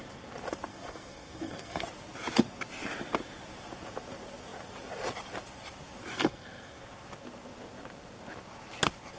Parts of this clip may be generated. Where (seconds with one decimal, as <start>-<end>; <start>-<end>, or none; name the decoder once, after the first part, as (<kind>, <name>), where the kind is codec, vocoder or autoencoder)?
0.7-1.8 (codec, SNAC); 6.1-6.8

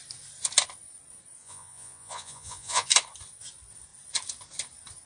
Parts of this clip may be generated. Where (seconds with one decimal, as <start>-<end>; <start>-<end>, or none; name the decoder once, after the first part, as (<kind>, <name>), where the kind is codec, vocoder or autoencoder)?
1.4-2.9 (vocoder, Vocos)

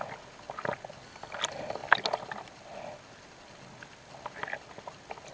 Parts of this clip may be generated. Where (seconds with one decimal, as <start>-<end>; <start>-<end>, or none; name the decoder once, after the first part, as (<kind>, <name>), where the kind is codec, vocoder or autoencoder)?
none

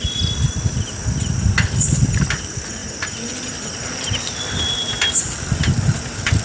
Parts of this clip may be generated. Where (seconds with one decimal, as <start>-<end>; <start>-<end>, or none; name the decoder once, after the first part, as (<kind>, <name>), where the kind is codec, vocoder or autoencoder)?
none

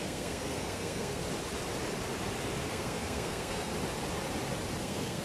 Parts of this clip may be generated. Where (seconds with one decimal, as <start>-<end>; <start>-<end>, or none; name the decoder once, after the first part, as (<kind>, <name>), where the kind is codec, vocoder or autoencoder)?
0.0-1.2 (codec, SNAC); 2.7-3.7; 4.8-5.2

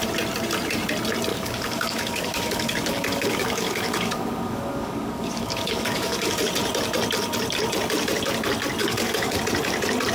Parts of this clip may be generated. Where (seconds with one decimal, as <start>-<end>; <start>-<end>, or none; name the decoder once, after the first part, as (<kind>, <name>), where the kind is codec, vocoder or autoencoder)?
1.3-6.4 (codec, DAC); 8.8-9.4

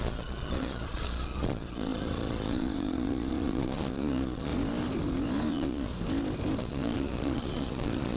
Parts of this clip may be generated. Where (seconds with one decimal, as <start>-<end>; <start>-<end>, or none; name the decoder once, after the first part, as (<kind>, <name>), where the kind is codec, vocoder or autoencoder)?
0.0-4.5 (vocoder, Vocos); 5.5-5.9; 6.6-8.2

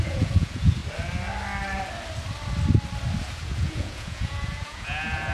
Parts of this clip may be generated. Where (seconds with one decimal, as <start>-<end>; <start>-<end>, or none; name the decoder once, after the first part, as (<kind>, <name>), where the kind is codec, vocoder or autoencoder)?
0.0-0.8 (vocoder, Vocos); 3.2-5.3